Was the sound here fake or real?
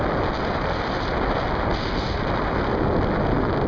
real